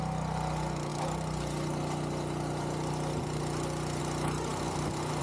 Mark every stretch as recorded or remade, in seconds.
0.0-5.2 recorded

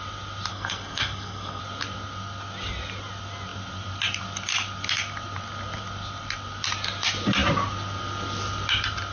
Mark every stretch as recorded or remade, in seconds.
0.0-0.5 recorded; 0.5-1.6 remade; 1.6-9.1 recorded

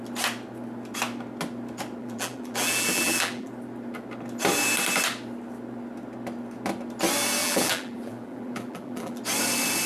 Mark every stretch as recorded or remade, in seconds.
0.0-2.0 recorded; 2.0-3.5 remade; 3.5-7.4 recorded; 7.4-9.2 remade; 9.2-9.9 recorded

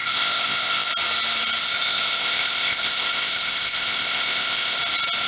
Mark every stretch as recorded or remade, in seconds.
0.0-0.9 remade; 0.9-1.6 recorded; 1.6-4.8 remade; 4.8-5.3 recorded

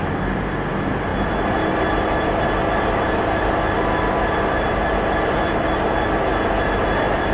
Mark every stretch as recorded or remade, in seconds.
0.0-7.3 recorded